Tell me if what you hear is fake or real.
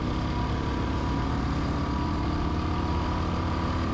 real